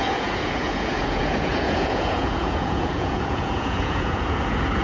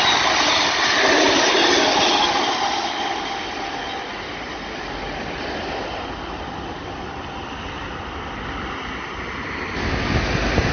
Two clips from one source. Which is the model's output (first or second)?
first